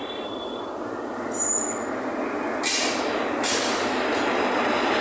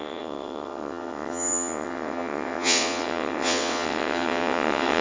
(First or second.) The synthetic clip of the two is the second